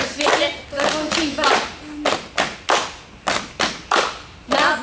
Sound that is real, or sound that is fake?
real